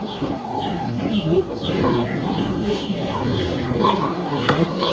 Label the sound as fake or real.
fake